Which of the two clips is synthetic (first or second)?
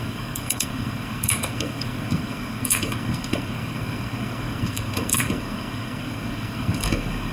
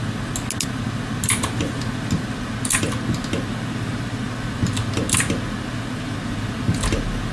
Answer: first